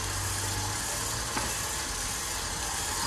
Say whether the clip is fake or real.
real